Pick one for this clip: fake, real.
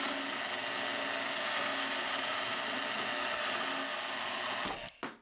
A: real